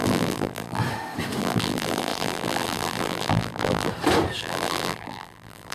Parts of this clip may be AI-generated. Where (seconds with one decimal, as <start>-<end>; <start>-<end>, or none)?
0.0-0.8; 1.4-3.9; 4.4-5.7